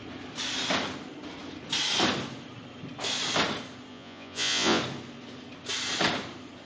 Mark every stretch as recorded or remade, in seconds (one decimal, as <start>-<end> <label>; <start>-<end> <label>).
0.0-3.9 recorded; 3.9-4.8 remade; 4.8-6.7 recorded